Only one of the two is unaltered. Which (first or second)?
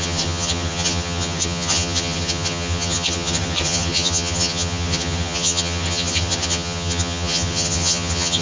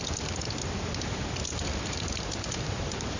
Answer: second